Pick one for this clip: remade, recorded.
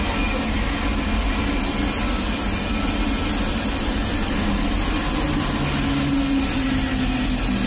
recorded